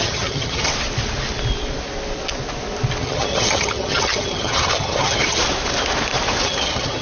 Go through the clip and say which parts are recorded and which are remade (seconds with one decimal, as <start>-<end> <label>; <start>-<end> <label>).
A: 0.0-0.7 remade; 0.7-3.0 recorded; 3.0-5.4 remade; 5.4-6.4 recorded; 6.4-7.0 remade

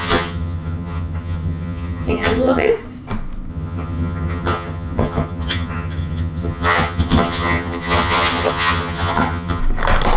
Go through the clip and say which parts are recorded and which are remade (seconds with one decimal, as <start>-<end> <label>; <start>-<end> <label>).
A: 0.0-2.7 remade; 2.7-3.5 recorded; 3.5-9.6 remade; 9.6-10.2 recorded